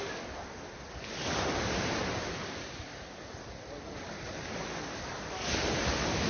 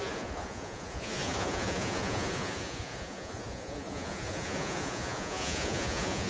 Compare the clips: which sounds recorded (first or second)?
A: first